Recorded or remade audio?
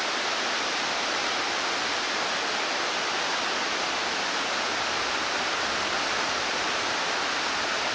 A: recorded